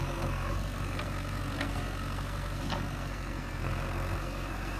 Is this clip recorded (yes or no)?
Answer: no